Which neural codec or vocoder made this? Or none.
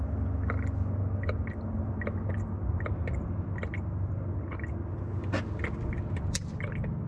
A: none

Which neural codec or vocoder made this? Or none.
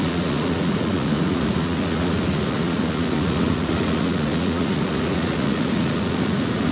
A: vocoder, Vocos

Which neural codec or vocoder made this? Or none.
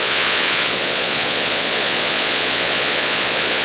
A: vocoder, Vocos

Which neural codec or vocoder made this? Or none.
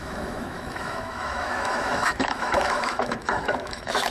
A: autoencoder, DAC-VAE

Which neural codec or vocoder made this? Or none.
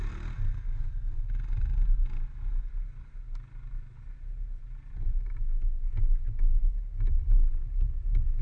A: none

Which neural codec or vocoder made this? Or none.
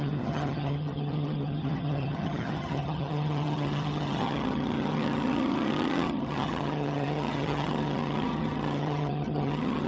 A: vocoder, HiFi-GAN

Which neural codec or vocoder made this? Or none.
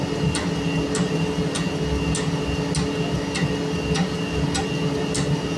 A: none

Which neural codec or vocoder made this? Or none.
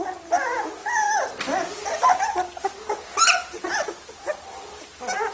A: none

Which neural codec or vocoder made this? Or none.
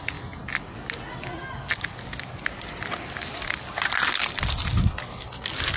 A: none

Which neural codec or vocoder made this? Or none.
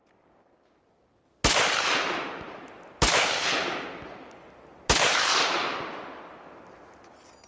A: none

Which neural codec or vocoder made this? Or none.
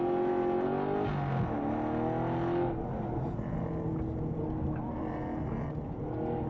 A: none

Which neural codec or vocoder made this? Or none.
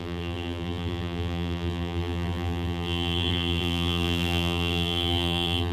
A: vocoder, BigVGAN v2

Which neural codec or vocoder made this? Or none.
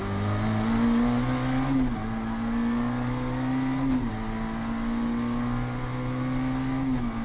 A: none